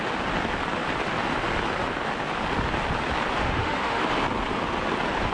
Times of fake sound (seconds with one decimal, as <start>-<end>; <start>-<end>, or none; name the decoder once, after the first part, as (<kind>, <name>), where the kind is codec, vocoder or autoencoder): 3.4-4.0 (autoencoder, DAC-VAE)